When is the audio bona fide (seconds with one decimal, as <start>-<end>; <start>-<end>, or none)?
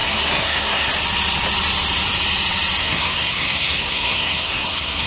0.9-2.8